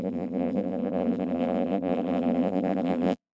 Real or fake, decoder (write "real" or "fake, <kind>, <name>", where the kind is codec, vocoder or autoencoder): fake, vocoder, BigVGAN v2